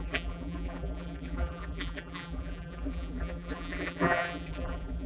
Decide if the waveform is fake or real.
fake